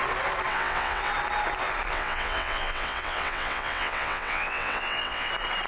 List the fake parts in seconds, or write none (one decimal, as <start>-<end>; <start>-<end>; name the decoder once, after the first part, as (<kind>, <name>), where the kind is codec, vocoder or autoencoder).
0.5-1.1 (vocoder, WaveNeXt); 1.9-5.3

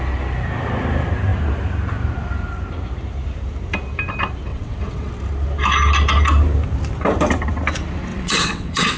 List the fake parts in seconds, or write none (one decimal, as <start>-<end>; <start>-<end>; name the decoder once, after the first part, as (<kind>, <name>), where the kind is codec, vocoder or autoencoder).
4.5-5.1 (vocoder, WaveNeXt); 8.1-9.0

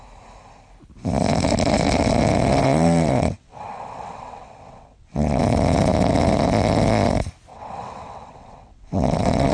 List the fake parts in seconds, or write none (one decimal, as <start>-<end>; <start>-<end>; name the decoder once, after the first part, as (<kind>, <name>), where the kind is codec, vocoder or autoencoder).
2.5-5.4 (vocoder, WaveNeXt); 7.5-9.5

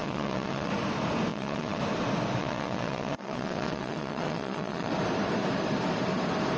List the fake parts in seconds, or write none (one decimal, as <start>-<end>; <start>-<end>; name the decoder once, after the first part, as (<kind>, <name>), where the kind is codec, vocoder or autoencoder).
0.0-0.7 (vocoder, WaveNeXt); 1.3-1.8; 2.4-4.9